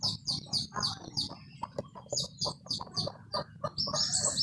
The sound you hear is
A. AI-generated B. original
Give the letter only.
B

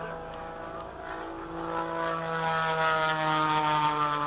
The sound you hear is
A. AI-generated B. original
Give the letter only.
B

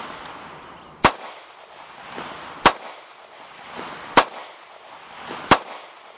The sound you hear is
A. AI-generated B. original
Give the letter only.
B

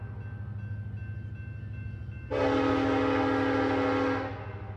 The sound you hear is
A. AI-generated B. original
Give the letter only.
B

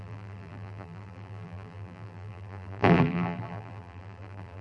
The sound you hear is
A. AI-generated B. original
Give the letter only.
A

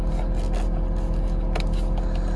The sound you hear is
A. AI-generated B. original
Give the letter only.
B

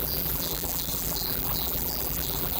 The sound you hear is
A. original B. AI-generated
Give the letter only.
B